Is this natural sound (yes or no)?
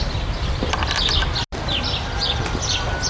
yes